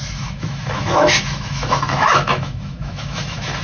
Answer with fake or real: fake